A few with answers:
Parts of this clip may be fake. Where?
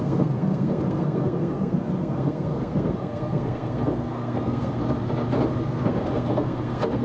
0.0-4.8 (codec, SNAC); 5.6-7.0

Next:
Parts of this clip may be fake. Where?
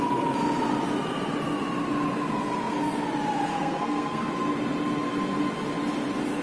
3.5-4.3 (codec, SNAC)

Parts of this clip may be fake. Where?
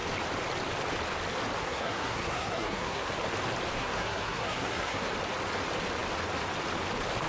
1.6-3.1 (codec, SNAC); 3.8-5.1